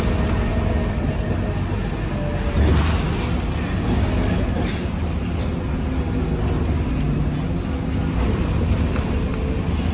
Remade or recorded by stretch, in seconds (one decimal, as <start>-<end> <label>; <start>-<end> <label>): 0.0-9.9 recorded